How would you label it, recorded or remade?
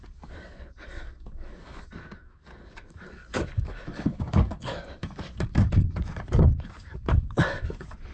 remade